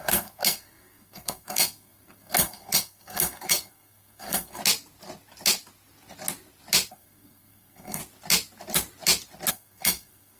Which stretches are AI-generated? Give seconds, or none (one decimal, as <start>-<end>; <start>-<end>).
0.0-4.6; 6.9-8.0; 9.5-10.4